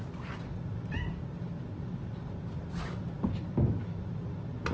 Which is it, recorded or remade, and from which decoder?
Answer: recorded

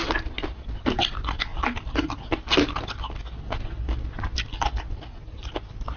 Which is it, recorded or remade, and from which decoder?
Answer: recorded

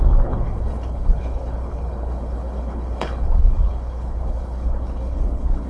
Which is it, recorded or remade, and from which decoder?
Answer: remade, codec, HILCodec